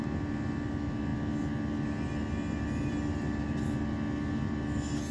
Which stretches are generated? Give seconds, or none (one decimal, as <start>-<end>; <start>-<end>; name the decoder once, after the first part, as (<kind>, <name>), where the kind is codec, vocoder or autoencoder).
none